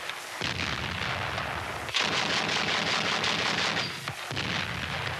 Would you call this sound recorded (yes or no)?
yes